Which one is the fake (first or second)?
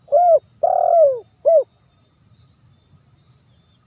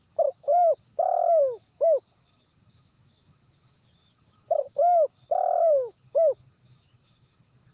second